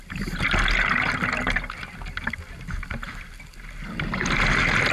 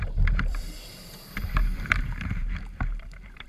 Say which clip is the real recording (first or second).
first